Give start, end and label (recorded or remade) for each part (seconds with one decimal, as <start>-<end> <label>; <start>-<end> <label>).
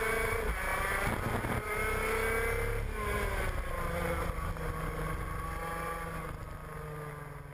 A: 0.0-7.5 recorded